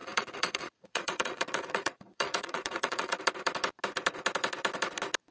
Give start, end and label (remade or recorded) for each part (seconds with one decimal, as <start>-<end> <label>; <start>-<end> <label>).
0.0-3.2 remade; 3.2-5.3 recorded